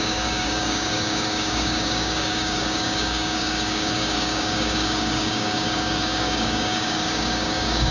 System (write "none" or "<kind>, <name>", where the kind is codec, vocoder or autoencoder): codec, DAC